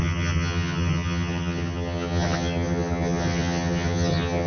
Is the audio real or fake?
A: fake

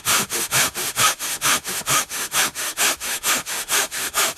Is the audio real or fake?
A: fake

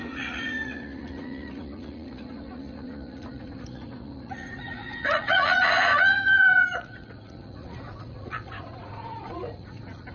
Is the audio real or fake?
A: fake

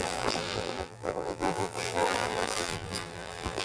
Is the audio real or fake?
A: fake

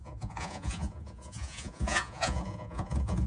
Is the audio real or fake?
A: fake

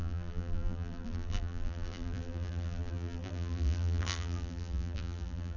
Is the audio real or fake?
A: fake